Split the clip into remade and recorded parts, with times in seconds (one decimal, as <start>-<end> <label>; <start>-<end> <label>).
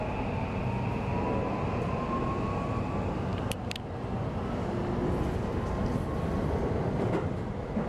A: 0.0-7.9 recorded